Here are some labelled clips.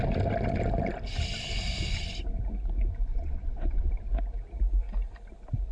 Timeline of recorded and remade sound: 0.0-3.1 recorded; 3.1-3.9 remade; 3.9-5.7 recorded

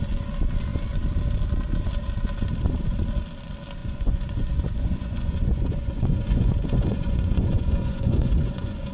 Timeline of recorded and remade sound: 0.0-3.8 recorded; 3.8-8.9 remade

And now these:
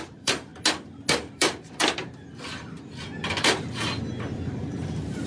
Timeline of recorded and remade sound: 0.0-0.5 remade; 0.5-1.1 recorded; 1.1-1.8 remade; 1.8-5.3 recorded